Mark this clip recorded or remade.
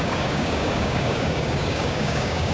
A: remade